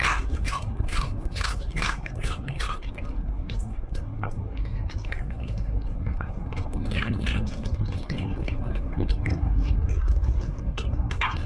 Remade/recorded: remade